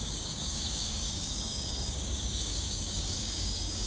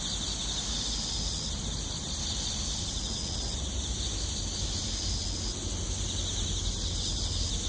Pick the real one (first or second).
second